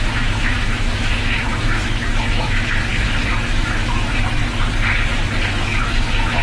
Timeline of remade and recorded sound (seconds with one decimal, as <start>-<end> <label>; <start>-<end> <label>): 0.0-2.9 remade; 2.9-3.5 recorded; 3.5-4.4 remade; 4.4-5.5 recorded; 5.5-6.4 remade